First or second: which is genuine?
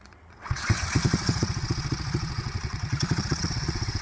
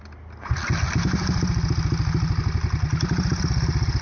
second